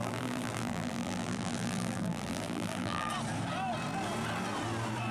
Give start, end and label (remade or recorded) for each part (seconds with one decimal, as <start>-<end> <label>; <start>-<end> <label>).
0.0-3.1 remade; 3.1-5.1 recorded